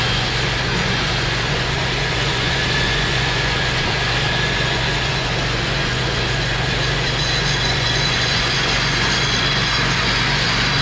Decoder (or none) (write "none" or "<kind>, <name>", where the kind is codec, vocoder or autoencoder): vocoder, Vocos